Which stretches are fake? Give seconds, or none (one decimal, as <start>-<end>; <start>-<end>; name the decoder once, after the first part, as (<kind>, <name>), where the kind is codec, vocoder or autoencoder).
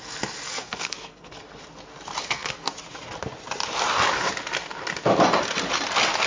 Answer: 0.5-1.3 (codec, SNAC); 2.2-2.7